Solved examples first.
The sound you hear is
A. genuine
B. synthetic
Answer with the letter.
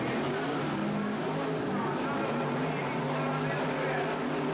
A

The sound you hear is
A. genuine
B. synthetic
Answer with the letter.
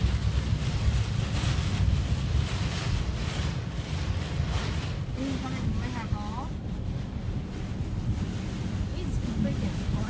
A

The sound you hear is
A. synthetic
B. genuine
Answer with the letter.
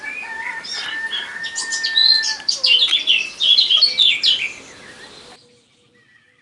B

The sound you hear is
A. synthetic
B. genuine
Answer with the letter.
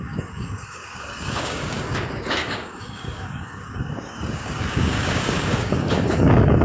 A